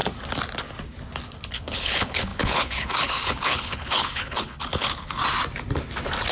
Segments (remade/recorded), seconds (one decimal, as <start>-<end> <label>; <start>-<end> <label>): 0.0-1.5 recorded; 1.5-5.2 remade; 5.2-6.3 recorded